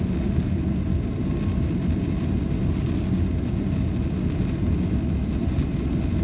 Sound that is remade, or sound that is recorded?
recorded